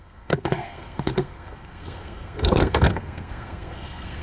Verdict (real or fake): fake